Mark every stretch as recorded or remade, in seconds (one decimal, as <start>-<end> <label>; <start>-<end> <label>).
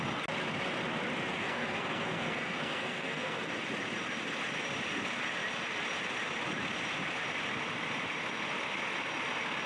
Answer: 0.0-1.3 recorded; 1.3-3.5 remade; 3.5-9.7 recorded